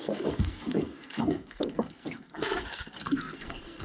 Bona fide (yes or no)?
no